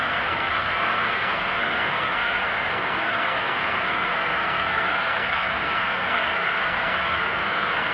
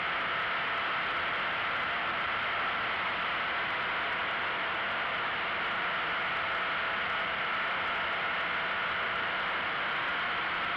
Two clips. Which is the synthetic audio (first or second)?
first